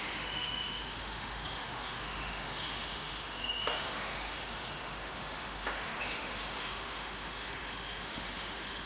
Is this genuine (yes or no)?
no